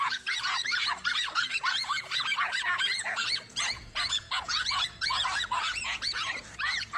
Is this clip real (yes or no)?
no